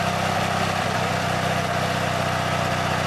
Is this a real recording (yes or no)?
yes